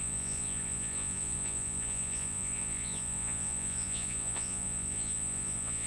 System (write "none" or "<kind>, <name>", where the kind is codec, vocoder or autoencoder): vocoder, Vocos